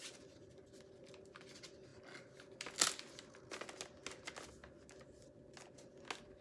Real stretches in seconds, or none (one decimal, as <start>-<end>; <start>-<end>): 0.0-6.4

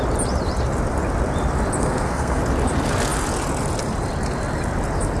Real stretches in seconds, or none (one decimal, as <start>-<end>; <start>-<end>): 0.0-1.8; 2.4-5.2

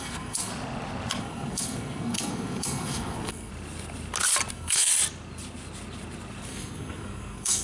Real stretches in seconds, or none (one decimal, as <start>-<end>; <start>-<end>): 0.5-1.2; 3.5-4.5; 4.9-6.5

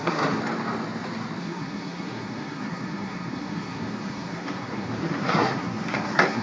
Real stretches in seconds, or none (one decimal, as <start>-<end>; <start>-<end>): 0.4-1.4

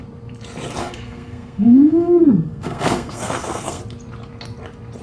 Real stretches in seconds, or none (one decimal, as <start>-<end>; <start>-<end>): 0.0-0.8; 3.8-5.0